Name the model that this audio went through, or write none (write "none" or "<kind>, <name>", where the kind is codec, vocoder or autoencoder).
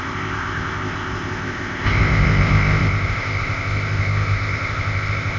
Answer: codec, ZipCodec